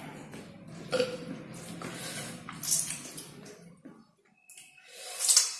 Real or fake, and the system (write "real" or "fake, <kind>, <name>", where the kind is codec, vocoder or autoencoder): real